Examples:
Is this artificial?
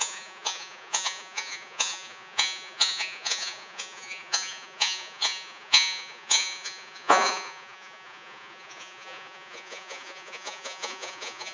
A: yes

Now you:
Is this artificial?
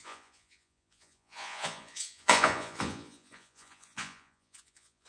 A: yes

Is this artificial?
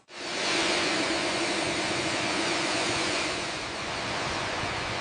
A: yes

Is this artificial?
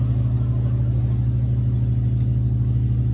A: no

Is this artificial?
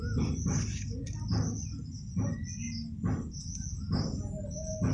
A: no